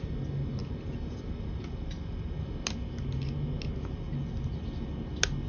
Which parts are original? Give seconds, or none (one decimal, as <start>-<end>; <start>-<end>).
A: 0.0-5.5